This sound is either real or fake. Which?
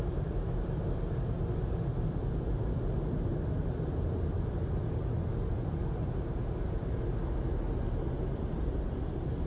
real